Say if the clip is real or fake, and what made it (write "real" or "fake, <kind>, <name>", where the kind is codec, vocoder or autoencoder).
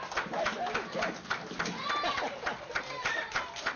real